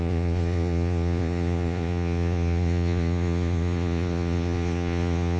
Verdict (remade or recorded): remade